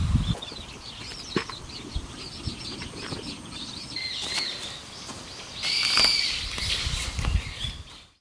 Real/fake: real